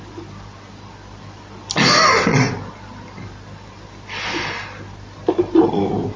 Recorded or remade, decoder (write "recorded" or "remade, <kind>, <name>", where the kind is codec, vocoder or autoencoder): recorded